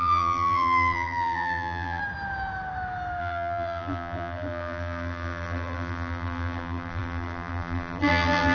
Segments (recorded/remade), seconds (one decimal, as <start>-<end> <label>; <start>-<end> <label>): 0.0-2.0 remade; 2.0-3.2 recorded; 3.2-8.5 remade